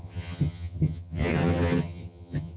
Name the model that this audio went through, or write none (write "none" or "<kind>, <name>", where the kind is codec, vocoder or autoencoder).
vocoder, HiFi-GAN